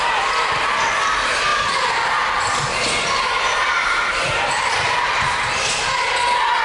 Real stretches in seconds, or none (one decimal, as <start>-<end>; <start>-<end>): 0.0-1.5; 4.9-6.6